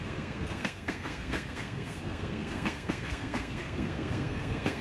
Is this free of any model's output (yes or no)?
no